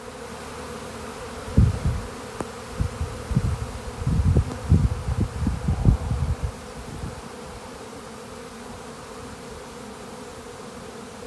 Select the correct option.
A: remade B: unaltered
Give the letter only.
B